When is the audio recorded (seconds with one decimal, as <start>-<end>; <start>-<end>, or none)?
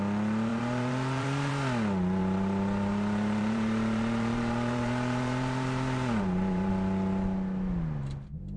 0.0-0.5; 1.5-2.2; 6.7-8.6